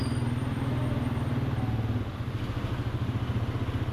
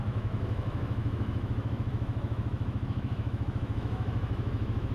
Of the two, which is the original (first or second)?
first